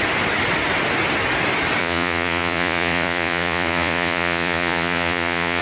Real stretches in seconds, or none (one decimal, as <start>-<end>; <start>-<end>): 0.0-1.8